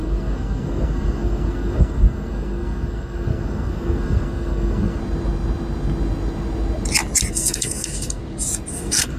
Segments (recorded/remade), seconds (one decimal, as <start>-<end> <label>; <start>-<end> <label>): 0.0-5.0 remade; 5.0-7.3 recorded; 7.3-8.2 remade; 8.2-8.7 recorded; 8.7-9.2 remade